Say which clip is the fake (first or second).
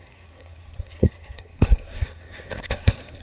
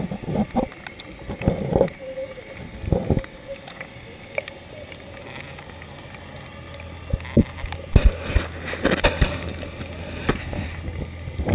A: first